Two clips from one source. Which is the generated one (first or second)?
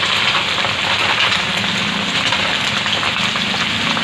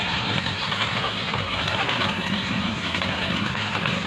second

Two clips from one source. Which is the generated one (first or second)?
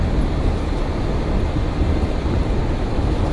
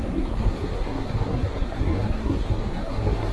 second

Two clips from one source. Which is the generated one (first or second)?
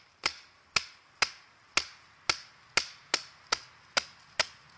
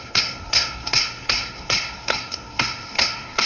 second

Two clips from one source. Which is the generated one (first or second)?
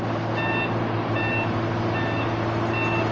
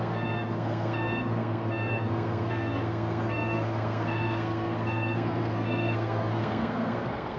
second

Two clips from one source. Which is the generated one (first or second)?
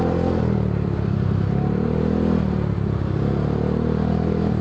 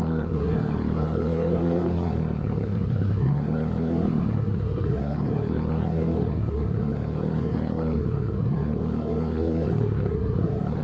second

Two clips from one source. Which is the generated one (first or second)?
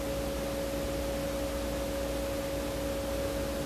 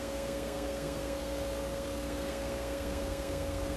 second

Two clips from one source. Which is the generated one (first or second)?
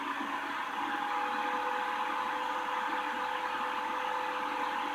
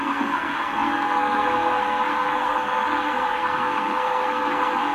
second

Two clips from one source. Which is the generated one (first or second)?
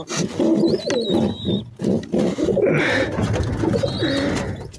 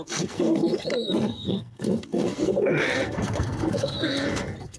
second